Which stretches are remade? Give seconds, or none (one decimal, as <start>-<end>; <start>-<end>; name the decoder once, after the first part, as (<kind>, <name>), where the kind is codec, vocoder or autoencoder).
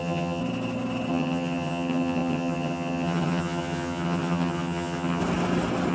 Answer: 0.0-0.4 (vocoder, HiFi-GAN); 1.1-5.2